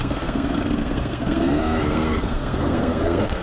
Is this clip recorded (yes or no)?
no